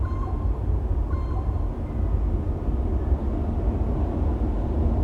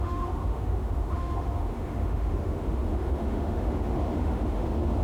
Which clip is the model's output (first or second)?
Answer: second